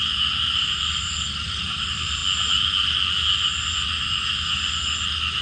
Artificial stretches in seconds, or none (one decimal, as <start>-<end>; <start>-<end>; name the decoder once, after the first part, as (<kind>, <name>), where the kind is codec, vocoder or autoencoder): 0.0-2.2 (vocoder, BigVGAN v2)